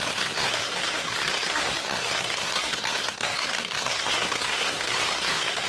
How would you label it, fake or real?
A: fake